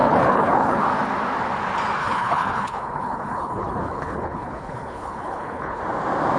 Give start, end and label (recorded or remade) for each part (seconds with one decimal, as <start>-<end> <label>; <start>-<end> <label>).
0.0-0.8 remade; 0.8-2.0 recorded; 2.0-5.8 remade; 5.8-6.4 recorded